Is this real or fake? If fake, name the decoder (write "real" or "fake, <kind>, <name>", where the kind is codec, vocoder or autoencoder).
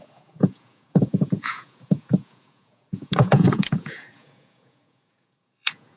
fake, vocoder, Vocos